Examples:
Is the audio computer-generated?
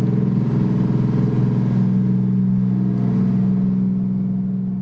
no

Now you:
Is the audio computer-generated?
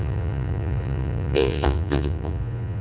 yes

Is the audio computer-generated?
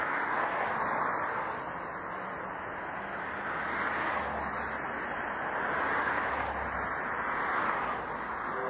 no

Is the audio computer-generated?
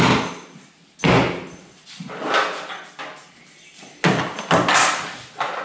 no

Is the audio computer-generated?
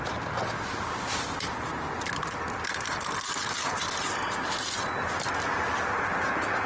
no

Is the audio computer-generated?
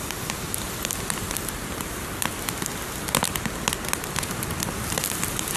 no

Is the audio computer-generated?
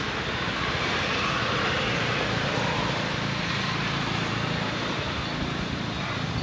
no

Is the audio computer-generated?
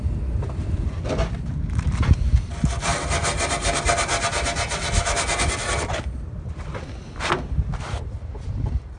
no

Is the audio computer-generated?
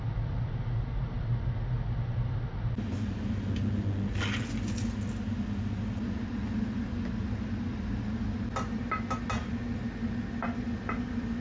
no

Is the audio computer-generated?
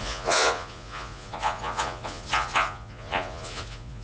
yes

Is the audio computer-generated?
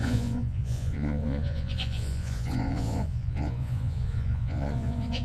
yes